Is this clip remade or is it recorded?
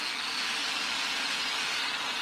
recorded